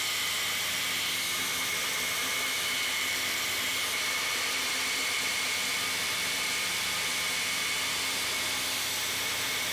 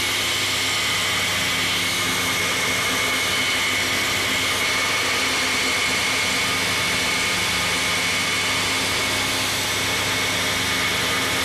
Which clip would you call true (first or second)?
second